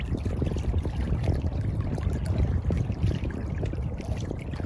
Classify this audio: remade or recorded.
remade